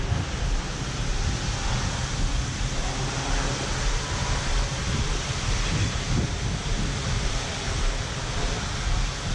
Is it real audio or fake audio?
real